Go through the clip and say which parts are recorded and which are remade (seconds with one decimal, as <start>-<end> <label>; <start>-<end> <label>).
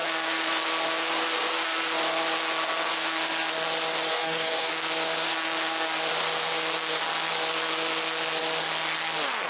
0.0-4.1 recorded; 4.1-4.7 remade; 4.7-9.5 recorded